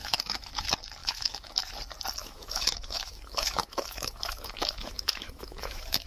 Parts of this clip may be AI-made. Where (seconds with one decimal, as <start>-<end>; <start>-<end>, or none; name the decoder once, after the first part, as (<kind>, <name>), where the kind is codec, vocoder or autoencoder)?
0.0-0.5 (autoencoder, DAC-VAE); 1.0-1.7; 2.2-6.1